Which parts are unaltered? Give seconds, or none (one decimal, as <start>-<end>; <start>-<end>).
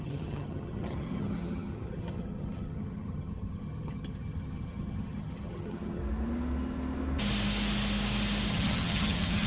6.0-8.5